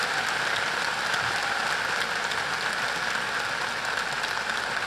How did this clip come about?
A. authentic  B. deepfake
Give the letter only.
A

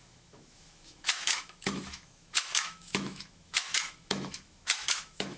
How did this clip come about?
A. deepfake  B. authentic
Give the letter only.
A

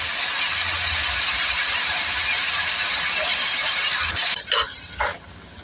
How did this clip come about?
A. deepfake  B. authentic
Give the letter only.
B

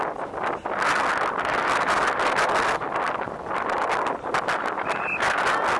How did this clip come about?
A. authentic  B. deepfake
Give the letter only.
A